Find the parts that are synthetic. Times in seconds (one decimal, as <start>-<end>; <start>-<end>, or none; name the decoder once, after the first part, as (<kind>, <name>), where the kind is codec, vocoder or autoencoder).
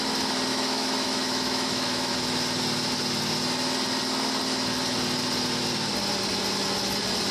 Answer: 0.5-2.1 (autoencoder, DAC-VAE)